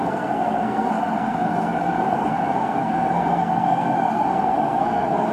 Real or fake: fake